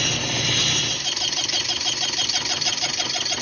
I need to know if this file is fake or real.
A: real